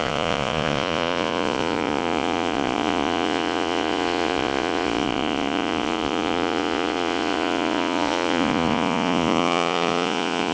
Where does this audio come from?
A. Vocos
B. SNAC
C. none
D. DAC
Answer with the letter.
A